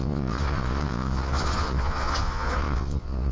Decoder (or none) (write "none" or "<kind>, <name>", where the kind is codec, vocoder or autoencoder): vocoder, Vocos